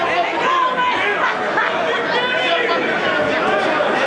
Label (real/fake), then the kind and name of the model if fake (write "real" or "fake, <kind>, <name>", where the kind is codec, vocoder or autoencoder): real